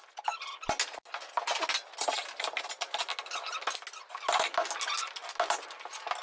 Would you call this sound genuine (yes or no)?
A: yes